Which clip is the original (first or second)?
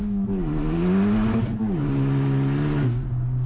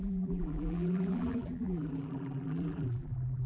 first